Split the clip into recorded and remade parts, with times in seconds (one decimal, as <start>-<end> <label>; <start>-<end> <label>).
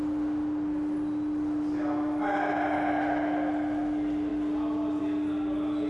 0.0-5.9 recorded